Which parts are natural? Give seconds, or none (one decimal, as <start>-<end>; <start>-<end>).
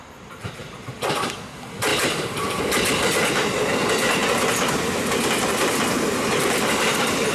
0.0-1.9; 2.6-7.3